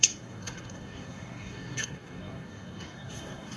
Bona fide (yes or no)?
no